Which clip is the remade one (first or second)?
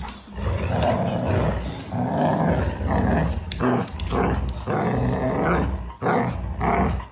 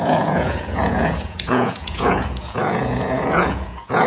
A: second